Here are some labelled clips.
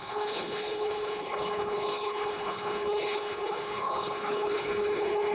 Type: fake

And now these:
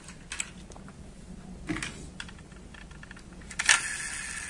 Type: real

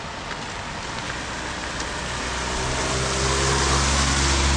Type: real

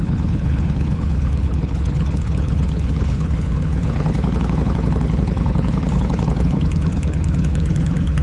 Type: fake